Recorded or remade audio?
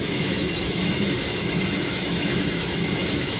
remade